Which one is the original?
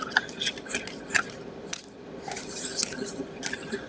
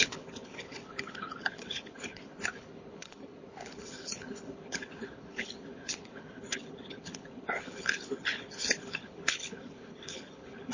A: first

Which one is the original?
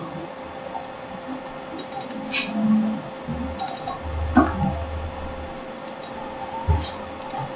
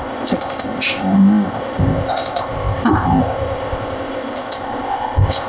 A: first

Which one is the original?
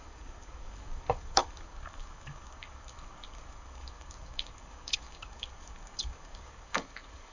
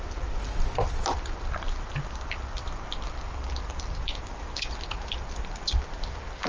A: second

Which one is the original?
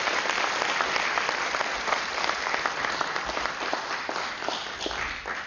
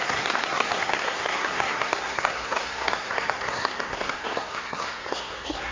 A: first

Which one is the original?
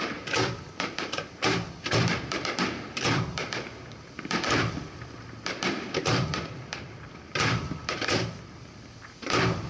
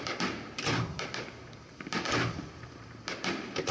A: second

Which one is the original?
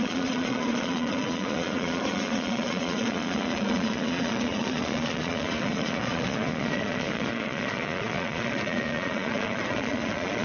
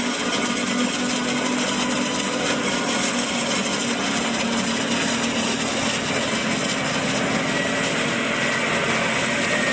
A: second